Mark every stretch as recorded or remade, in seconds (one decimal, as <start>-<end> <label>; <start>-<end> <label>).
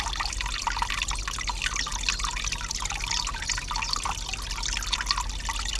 0.0-5.8 recorded